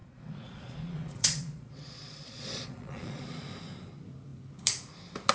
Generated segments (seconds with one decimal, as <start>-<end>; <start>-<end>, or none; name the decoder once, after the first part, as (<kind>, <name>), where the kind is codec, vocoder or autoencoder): 0.0-3.2 (vocoder, Vocos)